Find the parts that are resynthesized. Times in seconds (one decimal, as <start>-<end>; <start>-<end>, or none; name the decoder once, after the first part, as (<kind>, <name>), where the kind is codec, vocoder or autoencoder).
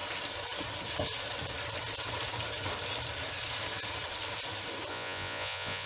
4.9-5.9 (vocoder, Vocos)